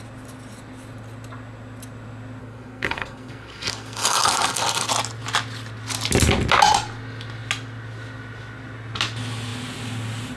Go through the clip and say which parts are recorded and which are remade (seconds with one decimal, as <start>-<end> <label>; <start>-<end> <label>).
0.0-2.4 recorded; 2.4-4.9 remade; 4.9-10.4 recorded